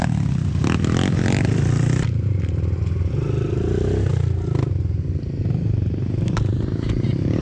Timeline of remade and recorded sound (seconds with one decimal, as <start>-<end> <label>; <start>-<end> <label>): 0.0-7.4 recorded